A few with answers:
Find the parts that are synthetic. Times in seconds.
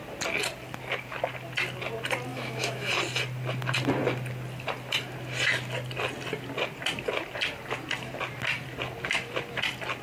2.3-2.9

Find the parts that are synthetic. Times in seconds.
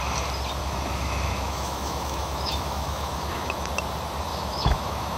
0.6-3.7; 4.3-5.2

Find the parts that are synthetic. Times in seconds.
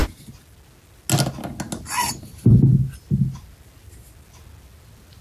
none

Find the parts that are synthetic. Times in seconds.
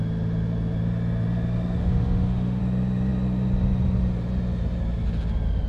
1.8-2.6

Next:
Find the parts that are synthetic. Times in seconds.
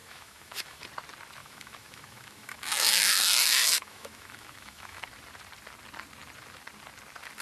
0.0-0.8; 1.4-5.0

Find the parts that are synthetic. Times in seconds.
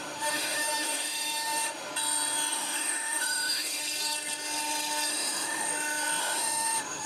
0.0-1.9; 2.5-3.8; 5.1-5.7; 6.2-7.1